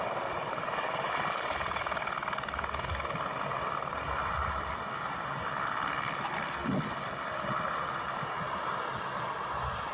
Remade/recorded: remade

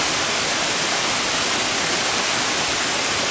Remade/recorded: remade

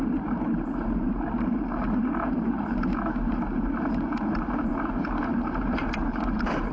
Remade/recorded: remade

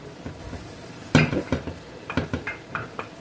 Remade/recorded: remade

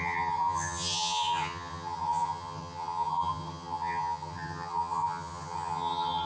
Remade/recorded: remade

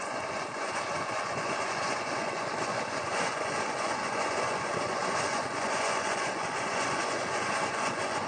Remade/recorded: remade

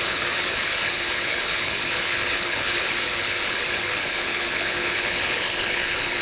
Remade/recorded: remade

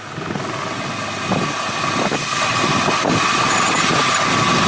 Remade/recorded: recorded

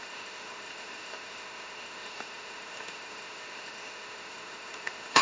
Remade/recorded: remade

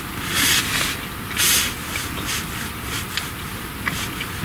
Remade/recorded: recorded